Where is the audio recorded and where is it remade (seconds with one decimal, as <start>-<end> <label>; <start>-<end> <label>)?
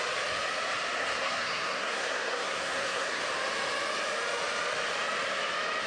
0.0-1.0 recorded; 1.0-3.2 remade; 3.2-5.9 recorded